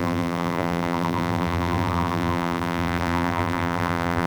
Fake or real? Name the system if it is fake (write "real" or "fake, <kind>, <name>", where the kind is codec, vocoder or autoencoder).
fake, vocoder, BigVGAN v2